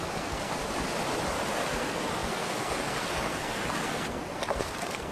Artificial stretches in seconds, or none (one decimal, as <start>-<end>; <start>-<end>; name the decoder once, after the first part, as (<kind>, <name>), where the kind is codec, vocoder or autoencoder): 0.0-0.6 (codec, SNAC); 1.5-5.1